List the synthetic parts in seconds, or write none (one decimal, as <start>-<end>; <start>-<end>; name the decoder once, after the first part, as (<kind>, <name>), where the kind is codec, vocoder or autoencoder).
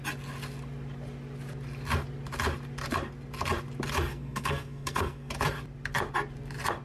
4.1-5.3 (codec, SNAC)